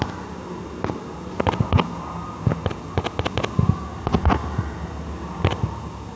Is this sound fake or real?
real